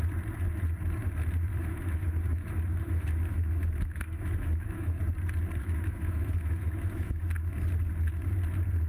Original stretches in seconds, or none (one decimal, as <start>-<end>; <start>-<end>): 0.0-1.5; 5.0-5.6; 7.2-8.9